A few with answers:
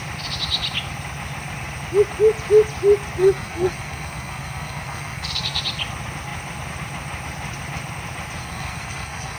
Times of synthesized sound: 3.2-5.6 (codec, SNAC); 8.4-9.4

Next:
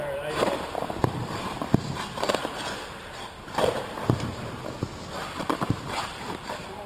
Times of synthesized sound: 0.0-4.9 (vocoder, BigVGAN v2); 5.4-6.9

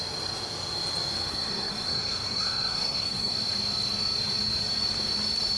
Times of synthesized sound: 1.3-3.3 (codec, SNAC)

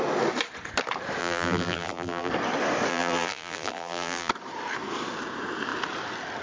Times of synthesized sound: 1.2-2.3 (vocoder, BigVGAN v2); 2.9-4.3

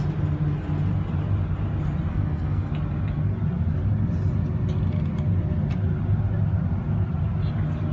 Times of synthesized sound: 2.1-2.7 (codec, SNAC)

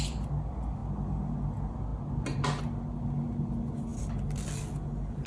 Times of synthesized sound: none

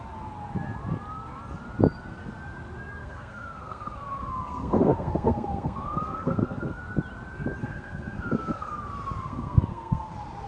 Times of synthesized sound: 3.0-6.8 (codec, SNAC); 7.6-8.7; 9.2-10.1

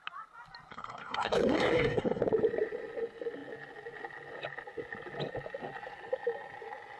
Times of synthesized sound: 0.7-2.2 (codec, SNAC)